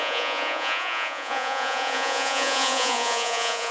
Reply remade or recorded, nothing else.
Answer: remade